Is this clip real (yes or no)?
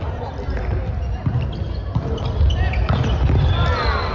yes